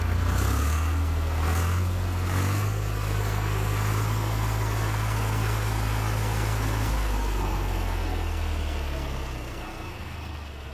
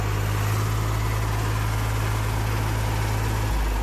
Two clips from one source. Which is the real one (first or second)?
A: second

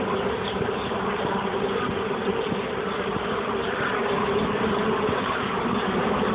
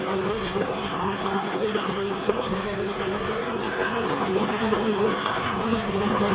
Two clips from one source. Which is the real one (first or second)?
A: first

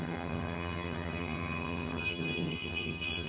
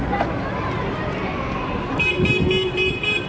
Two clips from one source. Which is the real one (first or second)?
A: second